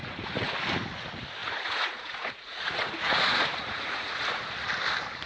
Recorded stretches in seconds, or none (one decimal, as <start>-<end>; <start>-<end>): 0.5-1.4; 4.5-5.3